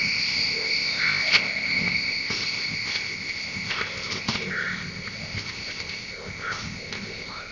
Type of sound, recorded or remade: remade